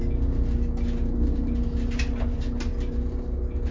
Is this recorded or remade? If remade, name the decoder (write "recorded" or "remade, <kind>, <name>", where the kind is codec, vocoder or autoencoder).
recorded